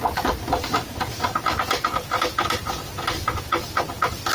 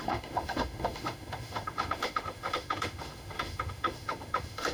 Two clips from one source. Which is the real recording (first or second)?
first